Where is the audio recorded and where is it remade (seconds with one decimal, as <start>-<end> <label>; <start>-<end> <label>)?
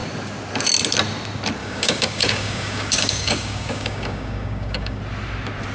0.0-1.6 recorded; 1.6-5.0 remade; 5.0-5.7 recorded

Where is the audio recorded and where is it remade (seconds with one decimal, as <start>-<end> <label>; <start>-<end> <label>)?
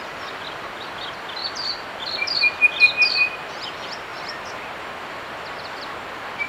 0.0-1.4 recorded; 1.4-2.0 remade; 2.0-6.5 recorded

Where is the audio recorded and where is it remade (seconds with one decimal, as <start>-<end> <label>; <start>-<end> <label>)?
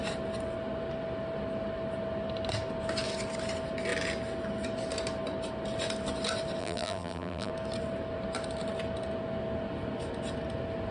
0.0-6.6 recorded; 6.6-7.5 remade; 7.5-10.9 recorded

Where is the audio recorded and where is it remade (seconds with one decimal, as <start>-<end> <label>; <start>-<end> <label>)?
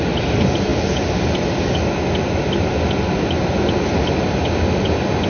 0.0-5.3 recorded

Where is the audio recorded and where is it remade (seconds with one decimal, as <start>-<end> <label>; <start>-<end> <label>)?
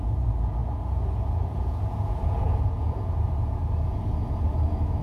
0.0-5.0 remade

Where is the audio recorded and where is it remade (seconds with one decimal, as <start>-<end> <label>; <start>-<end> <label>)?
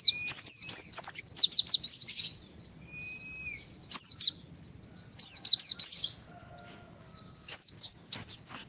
0.0-6.4 recorded; 6.4-8.7 remade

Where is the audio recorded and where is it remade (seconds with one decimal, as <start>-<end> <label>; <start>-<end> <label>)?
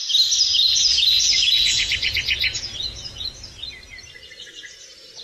0.0-0.5 recorded; 0.5-3.3 remade; 3.3-5.2 recorded